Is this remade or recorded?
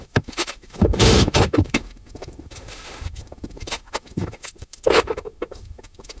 remade